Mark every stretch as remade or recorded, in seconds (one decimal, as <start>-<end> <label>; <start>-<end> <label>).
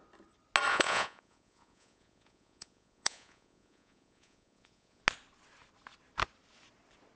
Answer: 0.0-0.7 recorded; 0.7-5.0 remade; 5.0-7.2 recorded